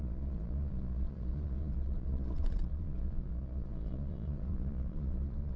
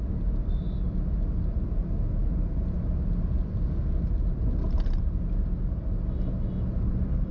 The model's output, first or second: first